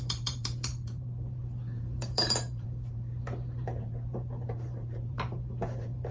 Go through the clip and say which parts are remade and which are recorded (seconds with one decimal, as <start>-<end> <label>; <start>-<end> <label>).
0.0-6.1 remade